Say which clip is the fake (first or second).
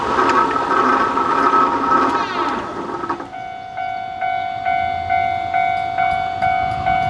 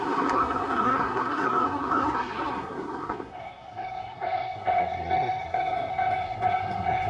second